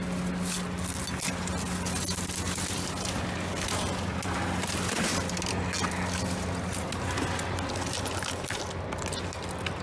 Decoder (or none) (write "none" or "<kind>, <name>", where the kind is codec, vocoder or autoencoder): none